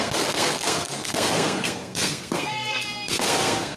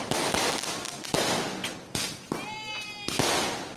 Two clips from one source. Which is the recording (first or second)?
second